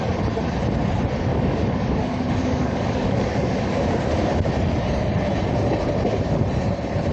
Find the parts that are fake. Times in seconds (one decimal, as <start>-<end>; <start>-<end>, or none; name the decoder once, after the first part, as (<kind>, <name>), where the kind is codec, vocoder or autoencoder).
1.3-3.8 (codec, DAC)